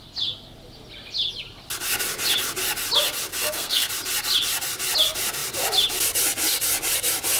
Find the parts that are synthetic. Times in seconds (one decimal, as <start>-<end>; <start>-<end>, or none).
3.3-3.9